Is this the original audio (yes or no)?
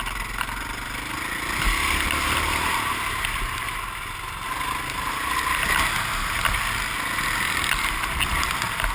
yes